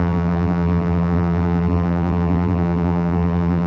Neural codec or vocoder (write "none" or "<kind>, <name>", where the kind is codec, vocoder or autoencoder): vocoder, BigVGAN v2